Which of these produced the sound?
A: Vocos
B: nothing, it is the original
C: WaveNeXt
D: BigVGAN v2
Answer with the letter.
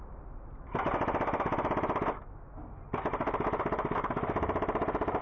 B